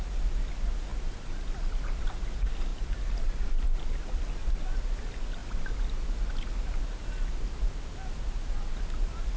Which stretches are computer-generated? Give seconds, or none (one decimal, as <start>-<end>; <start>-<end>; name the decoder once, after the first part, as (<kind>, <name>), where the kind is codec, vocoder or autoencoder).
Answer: 0.9-2.0 (vocoder, BigVGAN v2); 2.7-4.2